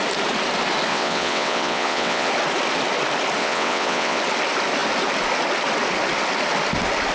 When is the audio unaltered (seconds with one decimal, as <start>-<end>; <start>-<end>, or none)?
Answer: 0.0-0.9; 2.3-3.4; 4.2-7.1